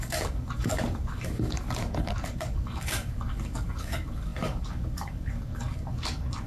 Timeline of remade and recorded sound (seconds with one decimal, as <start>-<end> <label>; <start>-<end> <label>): 0.0-6.5 remade